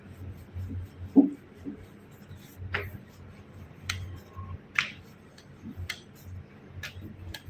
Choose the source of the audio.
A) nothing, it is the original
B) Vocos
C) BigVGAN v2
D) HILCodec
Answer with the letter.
A